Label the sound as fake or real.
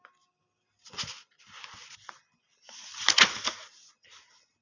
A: real